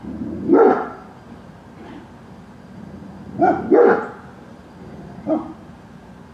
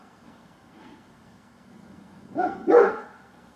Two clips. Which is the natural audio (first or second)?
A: first